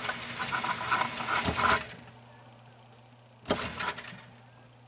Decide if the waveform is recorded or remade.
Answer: recorded